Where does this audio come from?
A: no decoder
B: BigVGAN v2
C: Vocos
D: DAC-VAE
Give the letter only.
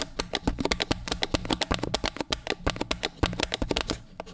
A